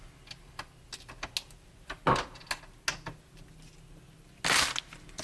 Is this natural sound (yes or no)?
yes